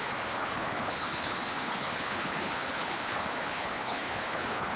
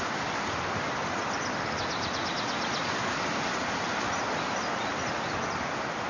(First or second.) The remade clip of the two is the first